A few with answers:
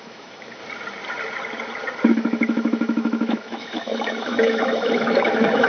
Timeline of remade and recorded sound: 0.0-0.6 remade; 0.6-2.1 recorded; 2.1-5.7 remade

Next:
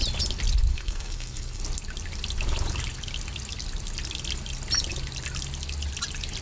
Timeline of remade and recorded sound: 0.0-0.7 recorded; 0.7-1.6 remade; 1.6-6.4 recorded

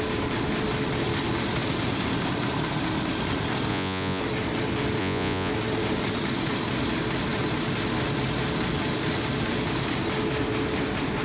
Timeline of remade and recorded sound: 0.0-3.7 recorded; 3.7-4.2 remade; 4.2-5.0 recorded; 5.0-5.5 remade; 5.5-11.2 recorded

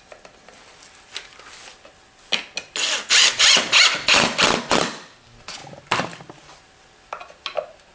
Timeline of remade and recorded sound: 0.0-7.9 recorded

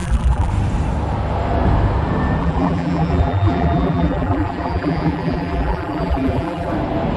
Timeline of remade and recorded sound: 0.0-0.5 remade; 0.5-2.4 recorded; 2.4-6.7 remade; 6.7-7.2 recorded

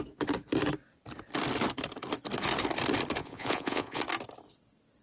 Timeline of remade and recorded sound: 0.0-3.2 recorded; 3.2-4.0 remade; 4.0-5.0 recorded

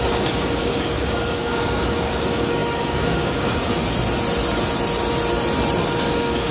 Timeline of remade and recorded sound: 0.0-3.8 remade; 3.8-6.1 recorded; 6.1-6.5 remade